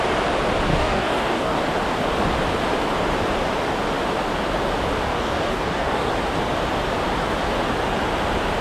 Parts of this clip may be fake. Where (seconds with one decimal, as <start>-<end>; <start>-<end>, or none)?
0.7-1.6; 5.1-6.1